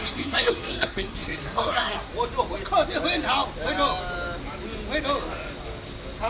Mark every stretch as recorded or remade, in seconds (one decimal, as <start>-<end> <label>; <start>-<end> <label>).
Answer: 0.0-2.1 remade; 2.1-6.3 recorded